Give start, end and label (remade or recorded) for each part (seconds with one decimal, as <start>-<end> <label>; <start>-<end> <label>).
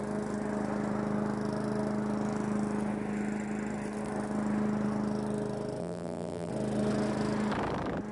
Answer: 0.0-5.8 recorded; 5.8-6.5 remade; 6.5-8.1 recorded